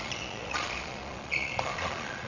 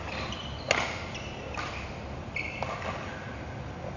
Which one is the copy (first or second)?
first